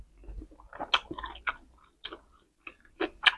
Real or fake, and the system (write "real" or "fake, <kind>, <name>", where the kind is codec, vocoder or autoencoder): real